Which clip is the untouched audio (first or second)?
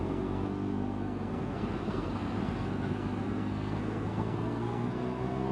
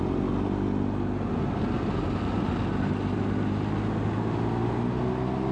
second